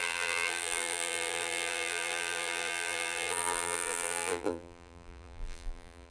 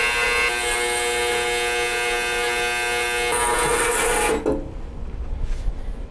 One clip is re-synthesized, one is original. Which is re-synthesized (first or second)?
first